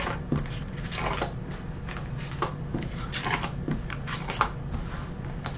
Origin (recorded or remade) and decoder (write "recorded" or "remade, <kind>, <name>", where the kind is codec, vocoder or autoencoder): recorded